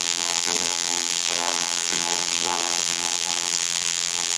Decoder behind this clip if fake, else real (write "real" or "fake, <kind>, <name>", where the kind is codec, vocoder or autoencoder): fake, vocoder, BigVGAN v2